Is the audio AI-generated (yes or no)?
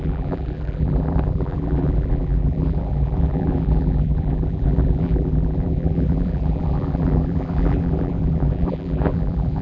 yes